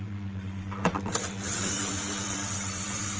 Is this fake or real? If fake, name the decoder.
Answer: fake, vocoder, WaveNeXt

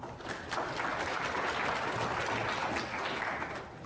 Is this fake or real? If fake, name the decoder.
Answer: real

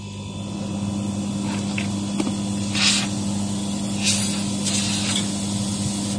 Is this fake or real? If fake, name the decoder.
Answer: real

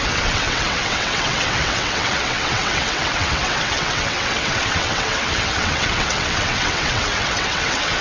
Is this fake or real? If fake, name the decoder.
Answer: fake, vocoder, WaveNeXt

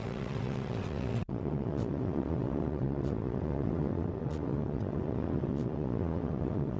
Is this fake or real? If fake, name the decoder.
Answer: fake, vocoder, WaveNeXt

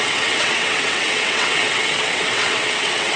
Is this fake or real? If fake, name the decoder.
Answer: fake, vocoder, WaveNeXt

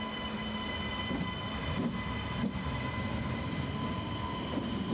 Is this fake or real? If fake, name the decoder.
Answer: real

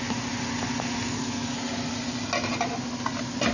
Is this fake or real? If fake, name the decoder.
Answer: real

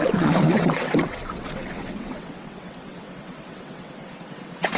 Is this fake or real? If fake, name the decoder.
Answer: fake, vocoder, WaveNeXt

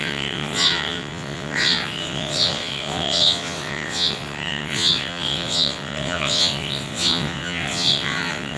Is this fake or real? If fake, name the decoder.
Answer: fake, vocoder, WaveNeXt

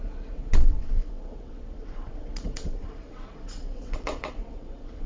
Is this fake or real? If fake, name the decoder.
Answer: fake, vocoder, WaveNeXt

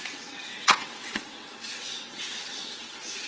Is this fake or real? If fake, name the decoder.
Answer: fake, vocoder, WaveNeXt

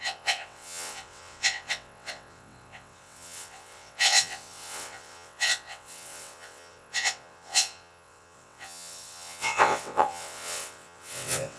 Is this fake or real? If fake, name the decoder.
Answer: fake, vocoder, WaveNeXt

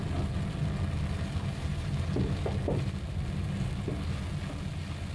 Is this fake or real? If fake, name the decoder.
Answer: real